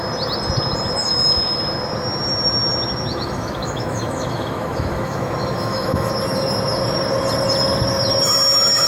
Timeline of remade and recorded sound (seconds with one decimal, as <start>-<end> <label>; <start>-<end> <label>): 0.0-1.0 recorded; 1.0-1.6 remade; 1.6-3.1 recorded; 3.1-6.1 remade; 6.1-8.9 recorded